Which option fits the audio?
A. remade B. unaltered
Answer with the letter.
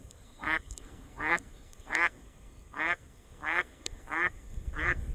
A